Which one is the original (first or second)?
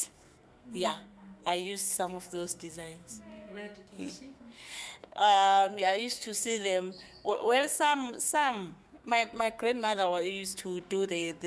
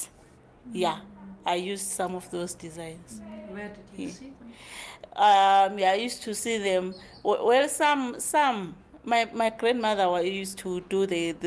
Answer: second